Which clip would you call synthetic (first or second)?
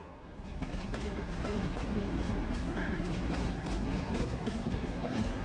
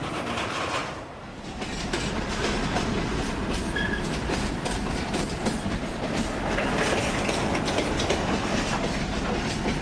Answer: first